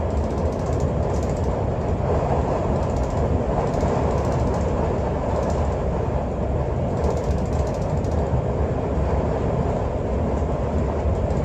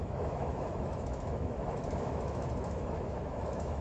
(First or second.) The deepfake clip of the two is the second